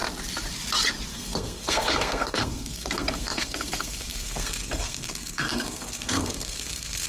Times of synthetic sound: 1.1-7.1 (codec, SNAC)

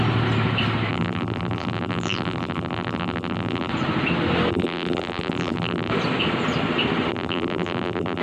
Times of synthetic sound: 0.9-3.7 (vocoder, BigVGAN v2); 4.5-5.9; 7.1-8.2

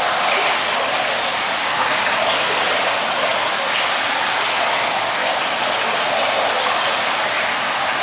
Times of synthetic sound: none

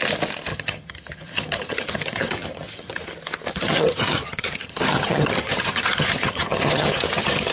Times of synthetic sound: 0.5-3.0 (vocoder, HiFi-GAN); 3.5-7.5

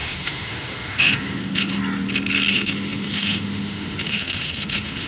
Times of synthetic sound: 0.0-1.8 (autoencoder, DAC-VAE); 2.5-5.1

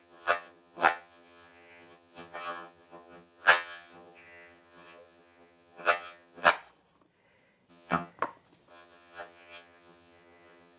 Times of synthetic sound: 0.0-6.5 (vocoder, HiFi-GAN); 7.7-8.1; 8.7-10.8

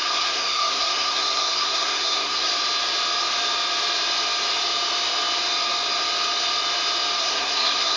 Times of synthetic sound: 0.0-2.5 (codec, SNAC); 7.2-8.0

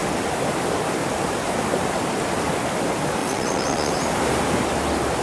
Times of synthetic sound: 3.2-3.9 (vocoder, WaveNeXt)